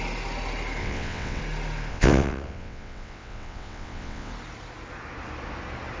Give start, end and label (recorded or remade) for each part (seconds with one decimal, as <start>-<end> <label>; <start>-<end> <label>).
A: 0.0-0.8 recorded; 0.8-1.4 remade; 1.4-1.9 recorded; 1.9-4.3 remade; 4.3-6.0 recorded